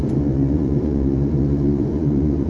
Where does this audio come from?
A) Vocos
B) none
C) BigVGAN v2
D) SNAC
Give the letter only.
A